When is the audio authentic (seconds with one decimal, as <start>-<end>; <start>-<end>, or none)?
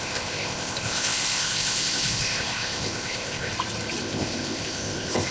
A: 3.5-4.0